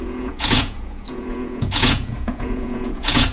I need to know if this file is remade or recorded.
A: remade